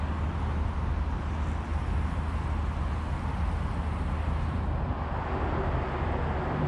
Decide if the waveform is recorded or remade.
recorded